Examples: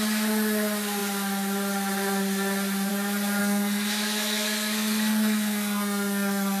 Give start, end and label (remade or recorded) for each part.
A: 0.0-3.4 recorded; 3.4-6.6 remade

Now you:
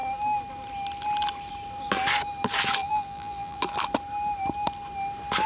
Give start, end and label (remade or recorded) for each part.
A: 0.0-2.8 recorded; 2.8-3.6 remade; 3.6-5.5 recorded